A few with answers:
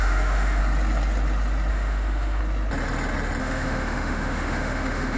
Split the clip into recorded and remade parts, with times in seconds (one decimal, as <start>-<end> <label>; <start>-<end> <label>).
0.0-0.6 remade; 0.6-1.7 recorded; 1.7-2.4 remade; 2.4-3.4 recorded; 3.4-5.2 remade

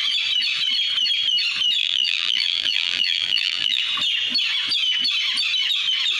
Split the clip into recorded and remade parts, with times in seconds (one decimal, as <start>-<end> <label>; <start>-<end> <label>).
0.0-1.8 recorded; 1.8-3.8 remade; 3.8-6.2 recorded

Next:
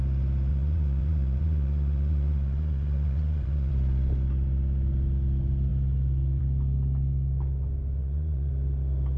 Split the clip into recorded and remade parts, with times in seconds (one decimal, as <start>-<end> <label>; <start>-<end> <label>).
0.0-0.5 recorded; 0.5-3.7 remade; 3.7-8.0 recorded; 8.0-8.5 remade; 8.5-9.2 recorded

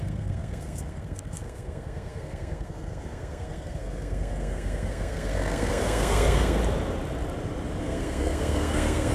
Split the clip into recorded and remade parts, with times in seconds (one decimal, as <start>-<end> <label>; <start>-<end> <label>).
0.0-6.6 remade; 6.6-7.8 recorded; 7.8-9.1 remade

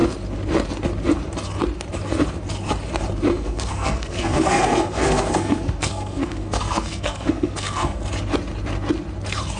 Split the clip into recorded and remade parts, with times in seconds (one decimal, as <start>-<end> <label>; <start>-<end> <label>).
0.0-3.3 recorded; 3.3-8.0 remade; 8.0-9.6 recorded

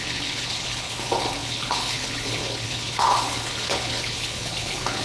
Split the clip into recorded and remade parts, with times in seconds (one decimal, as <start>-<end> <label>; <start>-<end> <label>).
0.0-5.0 remade

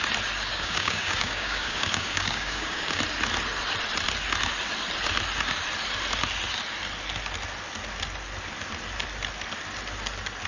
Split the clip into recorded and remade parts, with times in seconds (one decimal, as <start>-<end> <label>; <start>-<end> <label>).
0.0-0.5 recorded; 0.5-3.0 remade; 3.0-10.5 recorded